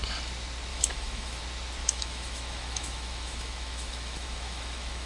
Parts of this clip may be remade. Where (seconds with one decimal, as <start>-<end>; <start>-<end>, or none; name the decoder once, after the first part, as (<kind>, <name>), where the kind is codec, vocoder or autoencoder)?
0.7-1.4 (autoencoder, DAC-VAE); 1.8-5.1